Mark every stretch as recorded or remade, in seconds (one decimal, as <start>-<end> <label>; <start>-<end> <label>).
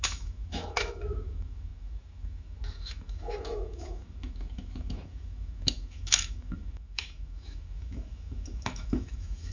0.0-9.5 remade